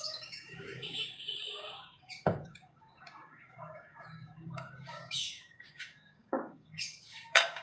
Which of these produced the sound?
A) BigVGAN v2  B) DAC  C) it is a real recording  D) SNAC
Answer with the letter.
B